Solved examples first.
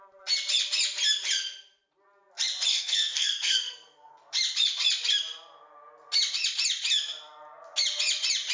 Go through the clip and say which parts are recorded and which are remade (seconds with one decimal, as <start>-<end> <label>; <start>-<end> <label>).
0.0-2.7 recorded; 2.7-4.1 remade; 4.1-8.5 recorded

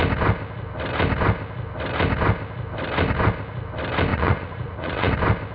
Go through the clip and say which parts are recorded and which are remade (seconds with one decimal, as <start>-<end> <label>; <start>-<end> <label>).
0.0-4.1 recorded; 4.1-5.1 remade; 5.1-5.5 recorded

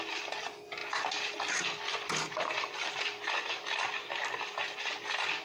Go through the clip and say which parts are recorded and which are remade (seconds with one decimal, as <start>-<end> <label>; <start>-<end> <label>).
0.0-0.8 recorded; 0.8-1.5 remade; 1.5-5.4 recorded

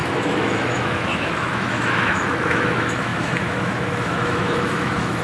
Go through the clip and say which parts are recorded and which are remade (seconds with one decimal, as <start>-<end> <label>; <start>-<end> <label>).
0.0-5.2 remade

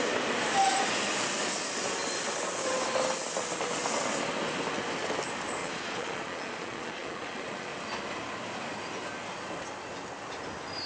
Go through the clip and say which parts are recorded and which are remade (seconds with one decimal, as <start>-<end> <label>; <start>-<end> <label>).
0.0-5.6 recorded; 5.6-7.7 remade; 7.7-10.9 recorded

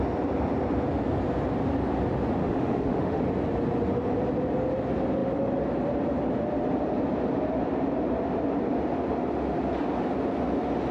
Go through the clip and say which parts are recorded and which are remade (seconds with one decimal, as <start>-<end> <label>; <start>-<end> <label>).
0.0-2.4 recorded; 2.4-3.2 remade; 3.2-10.9 recorded

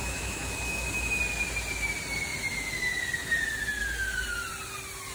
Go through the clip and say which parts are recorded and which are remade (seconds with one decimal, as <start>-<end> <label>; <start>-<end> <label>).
0.0-1.2 remade; 1.2-5.1 recorded